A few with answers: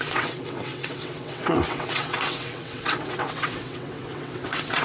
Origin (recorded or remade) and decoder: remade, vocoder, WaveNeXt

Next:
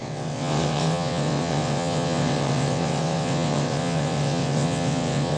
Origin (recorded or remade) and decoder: remade, vocoder, WaveNeXt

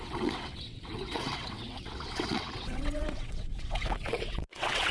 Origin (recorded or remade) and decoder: remade, vocoder, WaveNeXt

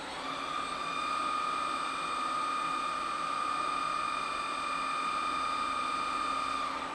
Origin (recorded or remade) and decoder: recorded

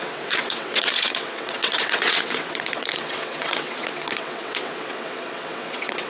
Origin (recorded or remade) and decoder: remade, vocoder, WaveNeXt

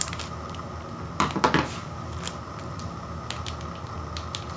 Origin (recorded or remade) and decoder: recorded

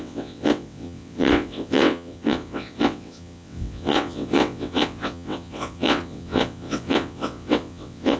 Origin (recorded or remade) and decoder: remade, vocoder, WaveNeXt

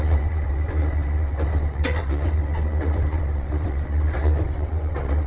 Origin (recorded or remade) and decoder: remade, vocoder, WaveNeXt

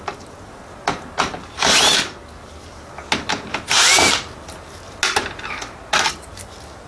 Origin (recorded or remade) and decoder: recorded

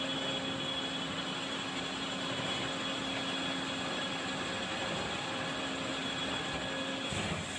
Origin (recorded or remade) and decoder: recorded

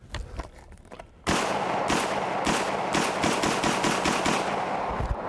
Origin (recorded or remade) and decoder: recorded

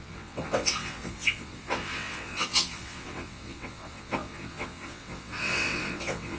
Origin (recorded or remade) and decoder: remade, vocoder, WaveNeXt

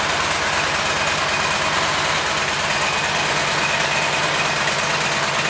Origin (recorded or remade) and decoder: recorded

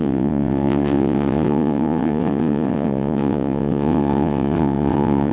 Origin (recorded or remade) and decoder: remade, vocoder, WaveNeXt